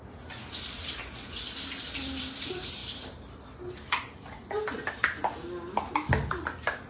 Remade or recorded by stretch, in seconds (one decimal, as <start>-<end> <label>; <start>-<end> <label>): 0.0-6.9 recorded